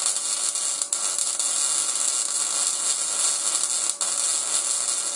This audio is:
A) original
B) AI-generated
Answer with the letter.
A